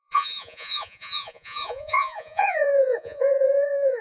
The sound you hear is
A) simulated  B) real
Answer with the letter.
A